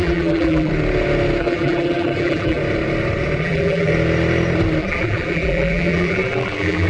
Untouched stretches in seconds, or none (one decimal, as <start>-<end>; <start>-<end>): 0.7-1.4; 2.6-3.4; 3.9-4.8